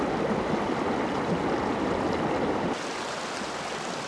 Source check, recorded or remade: recorded